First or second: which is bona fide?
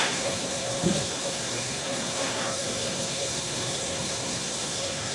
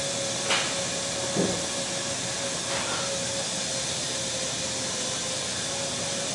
second